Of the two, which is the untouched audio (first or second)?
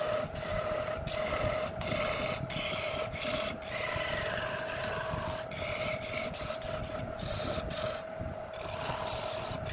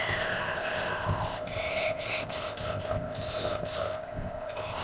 first